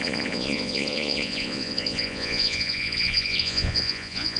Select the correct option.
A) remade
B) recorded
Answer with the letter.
A